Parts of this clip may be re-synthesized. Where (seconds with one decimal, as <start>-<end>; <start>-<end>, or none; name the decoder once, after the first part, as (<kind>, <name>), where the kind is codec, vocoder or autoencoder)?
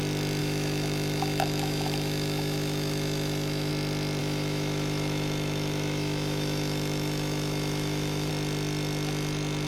0.4-3.7 (autoencoder, DAC-VAE); 4.2-8.3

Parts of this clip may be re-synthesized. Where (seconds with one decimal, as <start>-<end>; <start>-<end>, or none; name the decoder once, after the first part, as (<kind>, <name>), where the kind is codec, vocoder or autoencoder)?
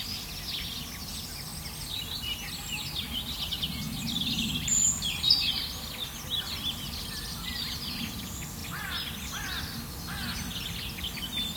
none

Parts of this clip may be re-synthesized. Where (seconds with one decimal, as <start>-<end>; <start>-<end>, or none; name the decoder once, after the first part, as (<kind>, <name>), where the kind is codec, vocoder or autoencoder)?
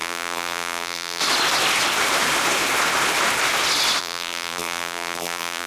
0.0-1.2 (vocoder, BigVGAN v2); 4.0-5.7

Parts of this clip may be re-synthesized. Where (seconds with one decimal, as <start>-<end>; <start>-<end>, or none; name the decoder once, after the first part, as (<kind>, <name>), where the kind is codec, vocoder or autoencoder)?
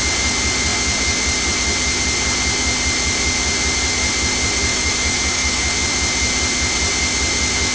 4.7-5.7 (autoencoder, DAC-VAE)